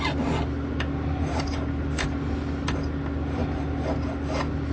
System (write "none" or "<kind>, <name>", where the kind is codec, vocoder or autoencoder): none